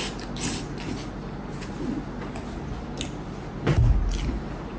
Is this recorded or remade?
recorded